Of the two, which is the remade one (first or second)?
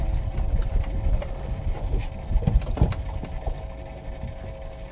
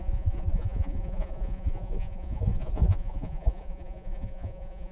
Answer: second